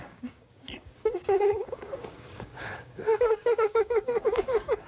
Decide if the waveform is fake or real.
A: fake